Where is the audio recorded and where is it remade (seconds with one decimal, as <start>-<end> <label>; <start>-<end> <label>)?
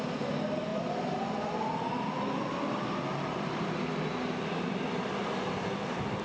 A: 0.0-6.2 recorded